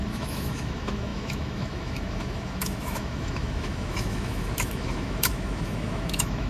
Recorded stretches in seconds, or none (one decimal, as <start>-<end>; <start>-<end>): none